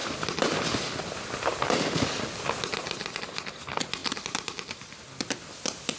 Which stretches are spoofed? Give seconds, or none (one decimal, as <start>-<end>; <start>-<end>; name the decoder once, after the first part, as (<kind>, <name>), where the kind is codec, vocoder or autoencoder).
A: none